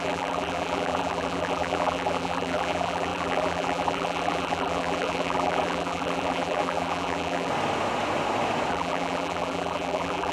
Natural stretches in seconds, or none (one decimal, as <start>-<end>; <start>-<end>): 7.5-8.7